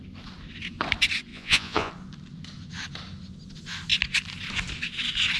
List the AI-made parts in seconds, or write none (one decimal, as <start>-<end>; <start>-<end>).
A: 1.3-1.9

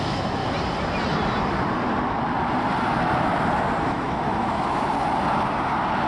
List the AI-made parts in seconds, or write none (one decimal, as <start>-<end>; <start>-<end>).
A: 0.0-0.4; 3.8-4.9

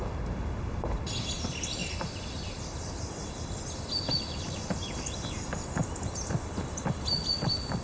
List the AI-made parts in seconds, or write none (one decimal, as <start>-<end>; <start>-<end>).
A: none

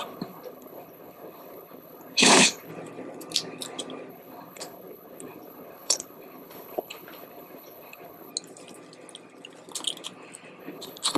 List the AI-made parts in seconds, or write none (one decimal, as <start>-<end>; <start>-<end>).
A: 0.0-2.7; 4.1-8.3; 10.6-11.2

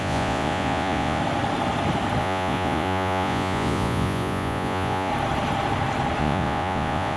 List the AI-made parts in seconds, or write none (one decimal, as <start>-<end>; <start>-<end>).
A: 0.0-1.2; 2.2-5.1; 6.2-7.2

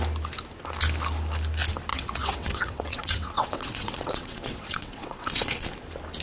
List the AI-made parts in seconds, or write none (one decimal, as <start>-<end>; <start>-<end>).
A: 1.9-5.6

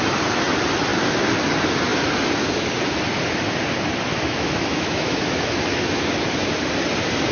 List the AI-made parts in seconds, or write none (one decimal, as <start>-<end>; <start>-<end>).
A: 4.1-6.1

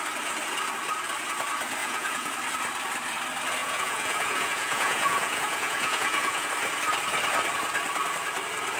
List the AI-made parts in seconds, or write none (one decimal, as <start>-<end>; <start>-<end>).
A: 1.8-2.3; 3.6-6.5